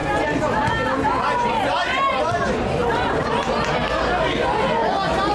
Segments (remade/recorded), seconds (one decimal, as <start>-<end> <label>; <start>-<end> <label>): 0.0-5.3 recorded

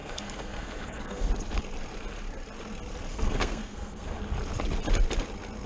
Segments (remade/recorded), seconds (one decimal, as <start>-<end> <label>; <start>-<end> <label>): 0.0-1.3 remade; 1.3-3.1 recorded; 3.1-4.2 remade; 4.2-5.7 recorded

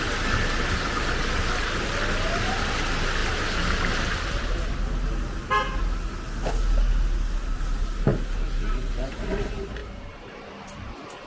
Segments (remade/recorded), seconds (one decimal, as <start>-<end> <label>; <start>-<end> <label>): 0.0-9.8 recorded; 9.8-10.5 remade; 10.5-11.3 recorded

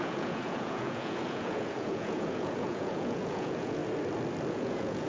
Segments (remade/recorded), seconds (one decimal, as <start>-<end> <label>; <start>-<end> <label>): 0.0-3.8 remade; 3.8-4.5 recorded; 4.5-5.1 remade

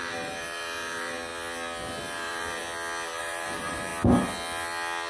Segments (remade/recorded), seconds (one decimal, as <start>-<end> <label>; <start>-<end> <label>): 0.0-1.3 remade; 1.3-2.0 recorded; 2.0-2.6 remade; 2.6-3.2 recorded; 3.2-3.9 remade; 3.9-5.1 recorded

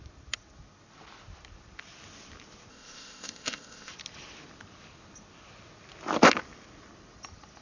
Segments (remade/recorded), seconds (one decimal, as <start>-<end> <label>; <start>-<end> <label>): 0.0-2.7 recorded; 2.7-3.9 remade; 3.9-7.6 recorded

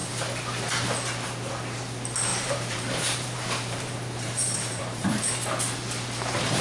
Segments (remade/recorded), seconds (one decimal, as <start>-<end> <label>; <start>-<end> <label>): 0.0-2.3 recorded; 2.3-5.3 remade; 5.3-6.6 recorded

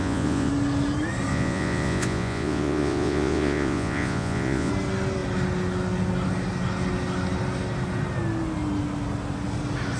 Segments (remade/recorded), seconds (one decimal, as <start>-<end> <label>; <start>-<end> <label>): 0.0-0.5 remade; 0.5-1.3 recorded; 1.3-4.7 remade; 4.7-10.0 recorded